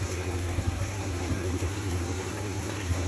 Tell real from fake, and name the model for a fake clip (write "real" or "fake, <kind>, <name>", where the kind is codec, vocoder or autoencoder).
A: fake, codec, SNAC